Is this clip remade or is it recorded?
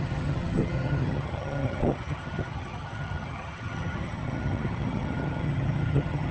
remade